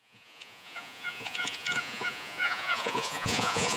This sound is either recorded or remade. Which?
remade